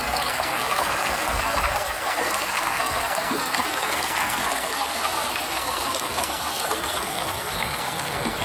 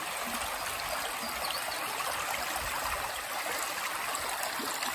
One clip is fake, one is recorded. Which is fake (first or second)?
first